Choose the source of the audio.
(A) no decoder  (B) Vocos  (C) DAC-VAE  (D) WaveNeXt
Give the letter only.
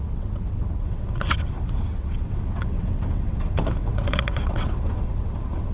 D